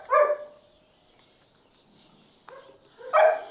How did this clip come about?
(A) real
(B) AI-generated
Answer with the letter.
A